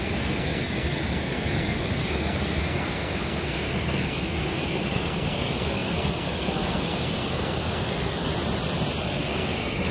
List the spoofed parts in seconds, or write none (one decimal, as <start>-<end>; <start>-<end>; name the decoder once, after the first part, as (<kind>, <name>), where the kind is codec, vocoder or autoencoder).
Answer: 0.0-8.3 (codec, SNAC); 9.0-9.9